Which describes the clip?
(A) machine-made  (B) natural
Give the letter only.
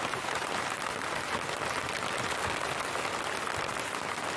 B